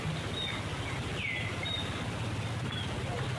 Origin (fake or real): real